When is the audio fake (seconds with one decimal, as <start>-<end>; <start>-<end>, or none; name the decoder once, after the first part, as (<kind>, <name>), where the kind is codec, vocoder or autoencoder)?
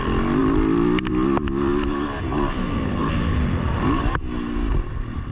none